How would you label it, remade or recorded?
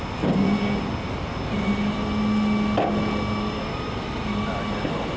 recorded